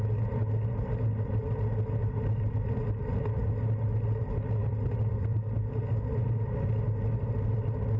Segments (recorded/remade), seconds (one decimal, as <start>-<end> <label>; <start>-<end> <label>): 0.0-4.6 recorded; 4.6-5.2 remade; 5.2-8.0 recorded